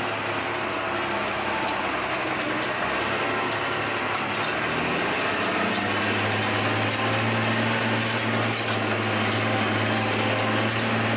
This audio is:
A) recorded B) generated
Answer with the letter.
A